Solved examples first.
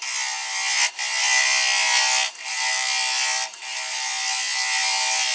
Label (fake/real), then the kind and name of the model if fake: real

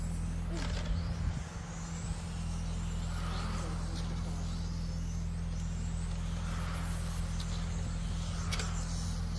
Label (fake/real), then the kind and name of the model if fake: real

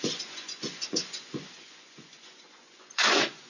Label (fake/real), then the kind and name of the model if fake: fake, vocoder, Vocos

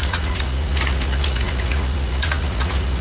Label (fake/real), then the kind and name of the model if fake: fake, vocoder, Vocos